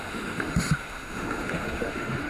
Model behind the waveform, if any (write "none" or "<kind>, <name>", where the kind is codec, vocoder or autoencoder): autoencoder, DAC-VAE